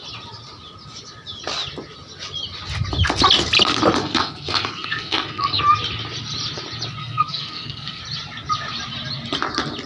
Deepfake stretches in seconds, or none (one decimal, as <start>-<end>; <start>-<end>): 4.0-5.6; 7.0-8.0